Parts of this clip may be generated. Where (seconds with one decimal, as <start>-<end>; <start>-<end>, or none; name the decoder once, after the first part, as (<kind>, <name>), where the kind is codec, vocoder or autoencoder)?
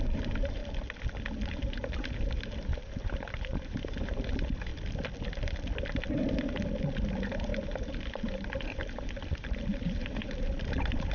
0.0-0.6 (vocoder, BigVGAN v2); 1.4-4.7; 6.8-11.1